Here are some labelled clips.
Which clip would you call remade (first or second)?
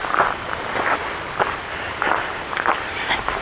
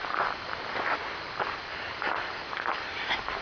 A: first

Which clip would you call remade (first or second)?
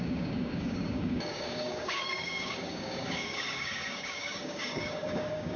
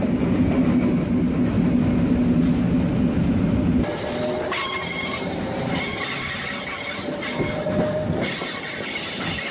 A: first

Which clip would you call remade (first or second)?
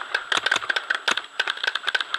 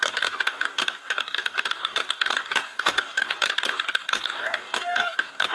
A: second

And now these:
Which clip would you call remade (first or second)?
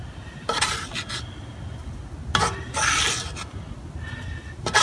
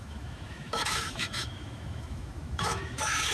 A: second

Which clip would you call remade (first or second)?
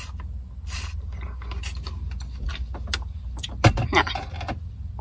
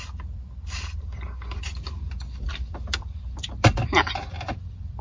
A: second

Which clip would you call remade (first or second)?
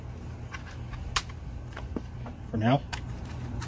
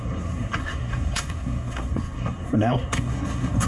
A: second